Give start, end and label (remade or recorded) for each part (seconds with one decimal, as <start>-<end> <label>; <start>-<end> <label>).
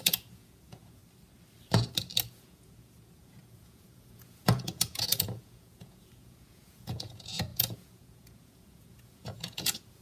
0.0-1.0 remade; 1.0-2.3 recorded; 2.3-10.0 remade